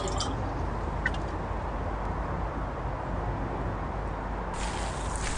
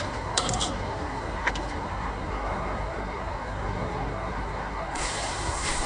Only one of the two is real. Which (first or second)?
first